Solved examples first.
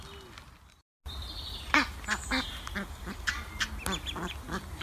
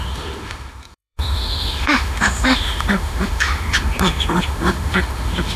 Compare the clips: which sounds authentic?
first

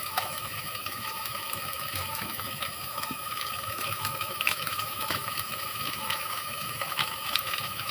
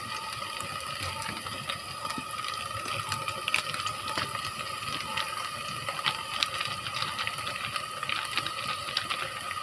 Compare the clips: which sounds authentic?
second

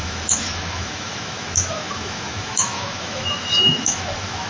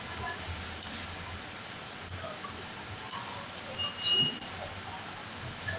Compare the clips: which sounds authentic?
second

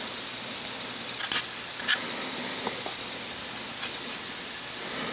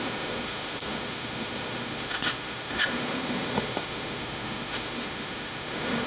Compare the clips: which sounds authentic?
first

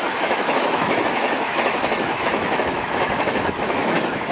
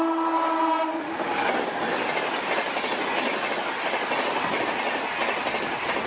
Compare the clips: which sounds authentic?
second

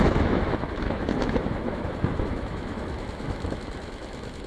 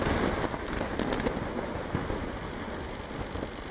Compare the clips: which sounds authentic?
second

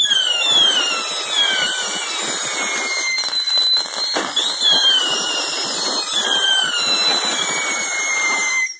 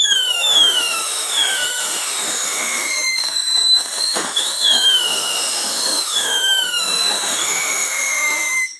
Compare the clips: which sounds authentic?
first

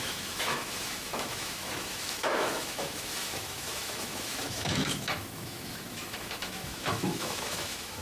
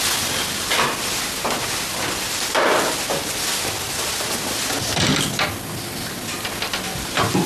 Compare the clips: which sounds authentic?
second